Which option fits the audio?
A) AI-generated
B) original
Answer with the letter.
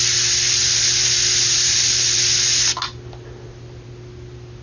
B